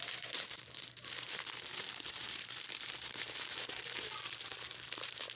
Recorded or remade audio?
remade